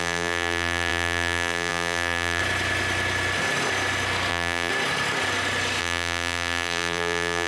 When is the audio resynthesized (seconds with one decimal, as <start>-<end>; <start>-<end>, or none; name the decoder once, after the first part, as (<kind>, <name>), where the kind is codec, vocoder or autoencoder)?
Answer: 0.0-2.4 (vocoder, BigVGAN v2); 4.3-4.7; 5.8-7.5